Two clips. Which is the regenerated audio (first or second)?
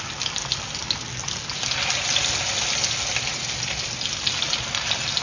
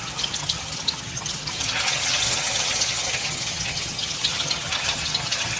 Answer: second